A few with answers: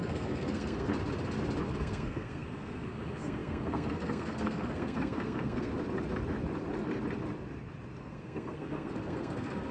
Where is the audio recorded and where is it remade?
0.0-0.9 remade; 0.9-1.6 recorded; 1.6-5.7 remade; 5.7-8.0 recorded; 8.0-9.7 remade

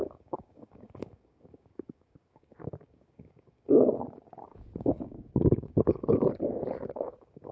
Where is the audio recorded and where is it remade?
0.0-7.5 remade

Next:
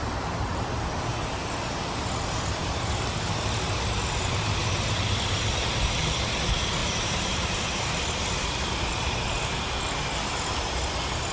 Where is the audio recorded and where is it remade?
0.0-6.8 recorded; 6.8-8.0 remade; 8.0-11.3 recorded

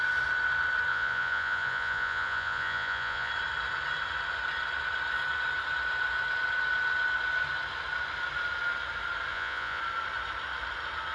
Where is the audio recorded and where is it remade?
0.0-0.9 recorded; 0.9-3.3 remade; 3.3-9.3 recorded; 9.3-9.8 remade; 9.8-11.1 recorded